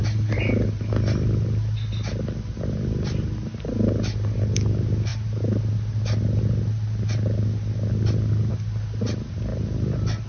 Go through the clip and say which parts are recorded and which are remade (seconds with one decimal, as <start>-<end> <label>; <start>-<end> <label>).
0.0-10.3 recorded